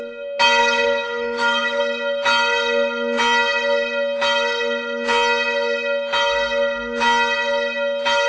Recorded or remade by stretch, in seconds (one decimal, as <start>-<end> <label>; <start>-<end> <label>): 0.0-0.6 recorded; 0.6-1.8 remade; 1.8-8.3 recorded